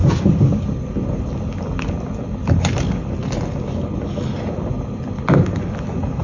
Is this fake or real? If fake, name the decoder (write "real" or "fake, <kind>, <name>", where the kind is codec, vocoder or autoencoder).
real